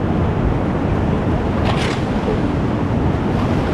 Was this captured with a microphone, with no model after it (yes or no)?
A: yes